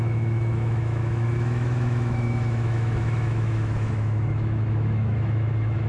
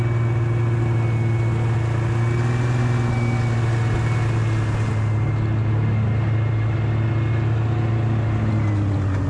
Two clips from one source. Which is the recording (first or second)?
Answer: second